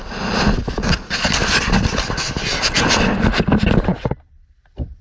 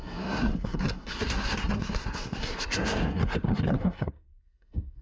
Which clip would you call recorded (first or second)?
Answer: first